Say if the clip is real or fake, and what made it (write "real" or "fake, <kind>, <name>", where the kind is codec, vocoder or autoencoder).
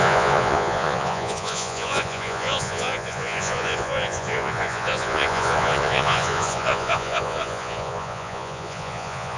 fake, vocoder, Vocos